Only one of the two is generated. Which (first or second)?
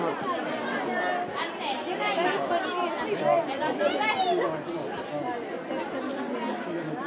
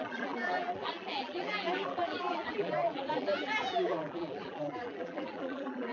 second